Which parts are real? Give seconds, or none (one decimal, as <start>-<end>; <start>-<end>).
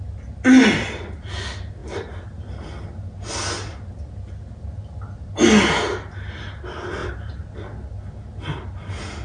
0.0-1.8; 2.4-7.0; 7.6-9.2